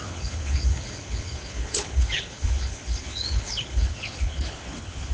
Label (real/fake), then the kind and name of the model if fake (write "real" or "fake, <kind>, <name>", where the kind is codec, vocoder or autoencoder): fake, codec, HILCodec